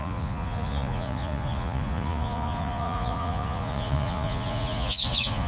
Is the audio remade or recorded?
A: remade